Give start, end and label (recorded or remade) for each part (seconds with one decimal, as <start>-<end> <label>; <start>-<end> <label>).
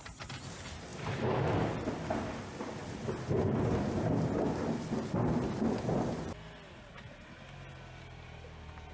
0.0-8.9 recorded